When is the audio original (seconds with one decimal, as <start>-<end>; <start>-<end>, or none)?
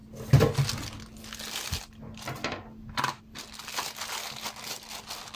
0.0-5.4